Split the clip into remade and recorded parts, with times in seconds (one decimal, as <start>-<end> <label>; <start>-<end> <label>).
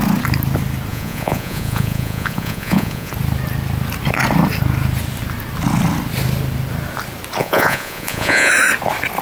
0.0-0.9 recorded; 0.9-3.1 remade; 3.1-7.4 recorded; 7.4-8.5 remade; 8.5-9.2 recorded